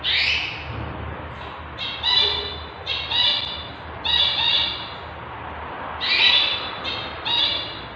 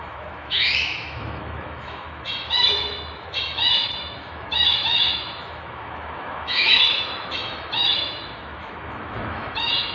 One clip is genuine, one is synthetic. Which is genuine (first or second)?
first